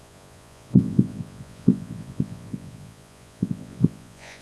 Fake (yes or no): yes